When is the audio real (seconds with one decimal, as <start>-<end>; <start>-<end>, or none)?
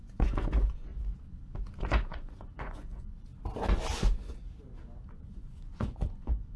0.9-1.8; 3.3-5.1